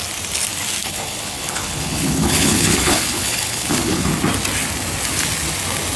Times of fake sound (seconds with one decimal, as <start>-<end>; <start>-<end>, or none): 0.8-4.1